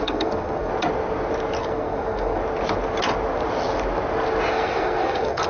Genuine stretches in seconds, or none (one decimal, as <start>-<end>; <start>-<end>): 0.7-1.6; 2.4-4.5